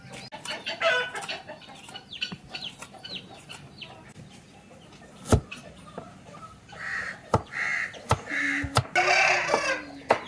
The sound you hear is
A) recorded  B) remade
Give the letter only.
A